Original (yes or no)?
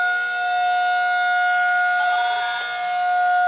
yes